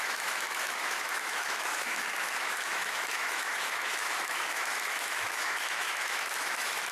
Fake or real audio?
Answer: fake